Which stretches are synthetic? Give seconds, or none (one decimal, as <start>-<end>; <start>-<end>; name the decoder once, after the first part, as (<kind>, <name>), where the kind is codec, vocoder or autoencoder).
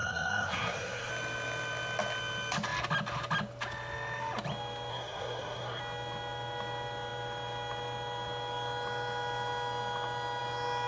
0.0-1.1 (codec, SNAC); 4.9-5.8